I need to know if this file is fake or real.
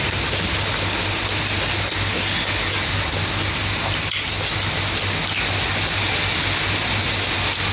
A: real